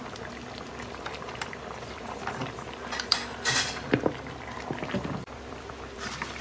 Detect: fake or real fake